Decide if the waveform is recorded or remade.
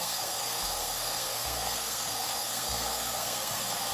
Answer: remade